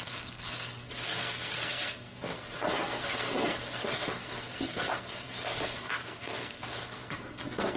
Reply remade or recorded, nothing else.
remade